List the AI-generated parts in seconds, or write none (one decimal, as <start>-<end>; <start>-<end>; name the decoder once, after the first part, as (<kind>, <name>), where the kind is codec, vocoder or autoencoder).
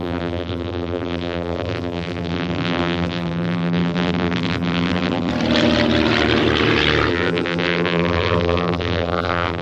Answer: 0.0-5.3 (vocoder, BigVGAN v2); 7.1-9.6